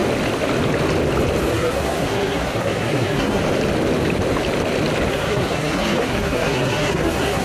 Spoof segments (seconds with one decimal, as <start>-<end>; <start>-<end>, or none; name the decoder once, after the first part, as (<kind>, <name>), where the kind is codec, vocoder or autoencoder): 1.5-3.4 (codec, SNAC); 5.1-7.4

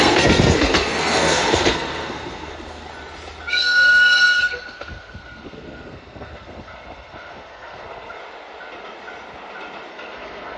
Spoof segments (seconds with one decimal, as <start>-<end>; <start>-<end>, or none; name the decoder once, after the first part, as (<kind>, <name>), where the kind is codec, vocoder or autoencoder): 0.0-2.9 (codec, SNAC); 3.5-8.2; 9.9-10.6

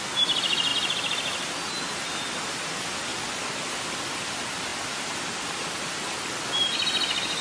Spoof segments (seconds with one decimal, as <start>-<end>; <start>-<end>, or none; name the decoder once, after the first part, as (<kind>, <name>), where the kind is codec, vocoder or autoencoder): none

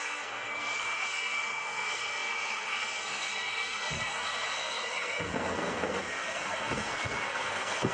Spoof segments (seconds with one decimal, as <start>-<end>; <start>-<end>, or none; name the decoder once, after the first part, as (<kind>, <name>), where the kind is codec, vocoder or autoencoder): 0.0-7.9 (codec, SNAC)

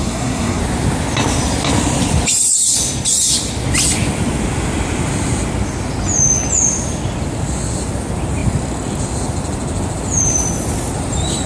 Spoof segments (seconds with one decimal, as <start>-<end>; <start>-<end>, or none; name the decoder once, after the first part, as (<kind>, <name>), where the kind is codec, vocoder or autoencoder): 0.0-0.6 (codec, SNAC)